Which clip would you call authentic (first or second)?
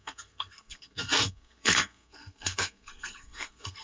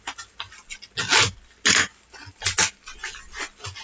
second